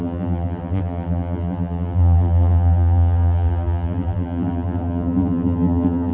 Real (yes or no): no